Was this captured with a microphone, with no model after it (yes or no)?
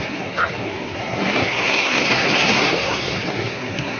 no